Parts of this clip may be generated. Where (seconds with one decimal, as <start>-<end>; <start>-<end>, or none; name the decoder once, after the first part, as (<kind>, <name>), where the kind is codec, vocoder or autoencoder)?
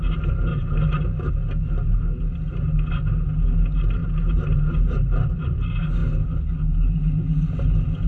0.5-1.3 (vocoder, BigVGAN v2); 4.0-5.5